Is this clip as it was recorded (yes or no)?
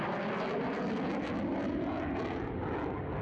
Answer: yes